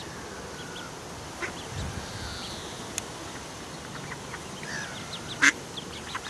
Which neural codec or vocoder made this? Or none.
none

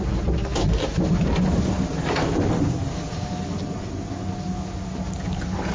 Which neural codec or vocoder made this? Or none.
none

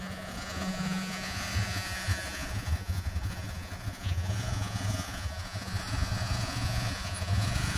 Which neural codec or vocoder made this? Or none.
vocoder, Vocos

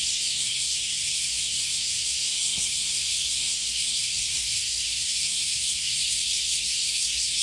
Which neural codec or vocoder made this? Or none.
codec, SNAC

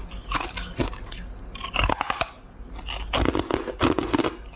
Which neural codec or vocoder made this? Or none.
none